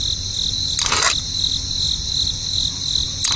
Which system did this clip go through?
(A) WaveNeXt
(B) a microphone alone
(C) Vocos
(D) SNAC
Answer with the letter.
B